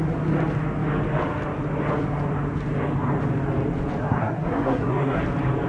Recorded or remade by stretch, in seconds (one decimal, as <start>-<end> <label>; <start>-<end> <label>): 0.0-4.0 recorded; 4.0-5.2 remade; 5.2-5.7 recorded